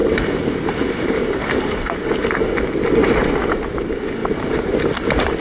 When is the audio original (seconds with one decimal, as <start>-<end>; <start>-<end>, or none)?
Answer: 2.1-4.2; 4.7-5.4